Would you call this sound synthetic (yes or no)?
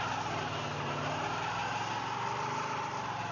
no